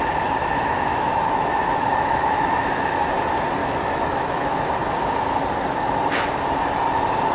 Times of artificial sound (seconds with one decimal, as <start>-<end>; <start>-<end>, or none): 0.4-3.1; 3.6-4.7